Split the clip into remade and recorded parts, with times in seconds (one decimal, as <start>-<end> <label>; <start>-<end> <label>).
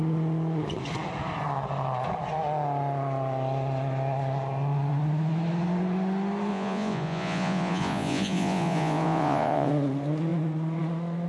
0.0-6.5 recorded; 6.5-9.7 remade; 9.7-11.3 recorded